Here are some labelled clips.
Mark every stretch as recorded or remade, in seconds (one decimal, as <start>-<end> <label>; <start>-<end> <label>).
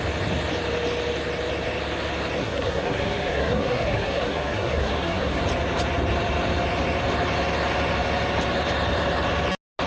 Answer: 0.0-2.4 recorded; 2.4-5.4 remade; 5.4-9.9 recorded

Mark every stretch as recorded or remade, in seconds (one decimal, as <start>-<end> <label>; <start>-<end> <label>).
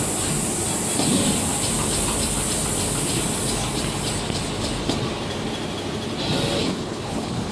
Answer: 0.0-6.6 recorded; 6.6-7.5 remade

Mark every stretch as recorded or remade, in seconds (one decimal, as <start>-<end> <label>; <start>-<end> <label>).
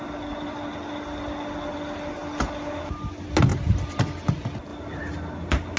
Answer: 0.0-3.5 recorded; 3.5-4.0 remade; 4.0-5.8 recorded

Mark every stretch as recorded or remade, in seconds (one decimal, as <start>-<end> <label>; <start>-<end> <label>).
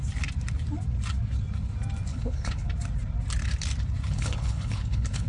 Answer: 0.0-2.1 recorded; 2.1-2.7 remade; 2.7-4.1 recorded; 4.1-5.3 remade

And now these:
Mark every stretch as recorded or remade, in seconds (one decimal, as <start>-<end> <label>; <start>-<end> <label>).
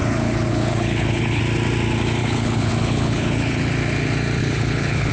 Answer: 0.0-1.4 remade; 1.4-2.2 recorded; 2.2-3.7 remade; 3.7-4.4 recorded; 4.4-5.1 remade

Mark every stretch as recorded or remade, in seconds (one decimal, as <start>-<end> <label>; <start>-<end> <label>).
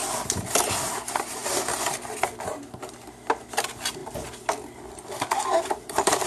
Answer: 0.0-1.4 remade; 1.4-2.4 recorded; 2.4-6.3 remade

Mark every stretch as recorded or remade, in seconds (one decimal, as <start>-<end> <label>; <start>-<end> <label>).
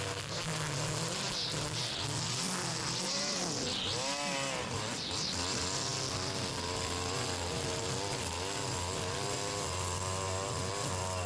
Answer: 0.0-11.3 recorded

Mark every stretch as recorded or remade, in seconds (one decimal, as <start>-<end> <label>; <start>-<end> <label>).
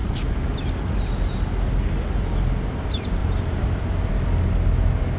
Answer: 0.0-3.2 recorded; 3.2-4.1 remade; 4.1-5.2 recorded